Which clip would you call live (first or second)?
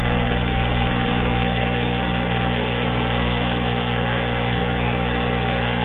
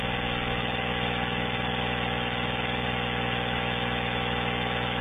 second